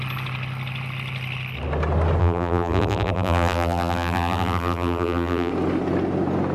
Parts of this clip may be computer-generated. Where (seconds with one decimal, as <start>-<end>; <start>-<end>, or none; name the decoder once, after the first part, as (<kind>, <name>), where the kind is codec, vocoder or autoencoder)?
2.2-5.5 (vocoder, BigVGAN v2)